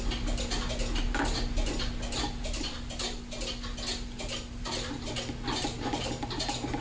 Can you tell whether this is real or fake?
real